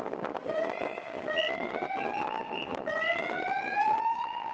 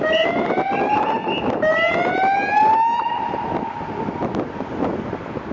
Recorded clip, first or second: second